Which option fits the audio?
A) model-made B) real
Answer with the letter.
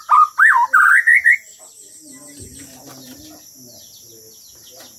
B